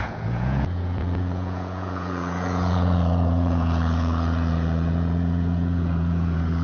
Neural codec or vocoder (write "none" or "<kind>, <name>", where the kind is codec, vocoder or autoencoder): vocoder, Vocos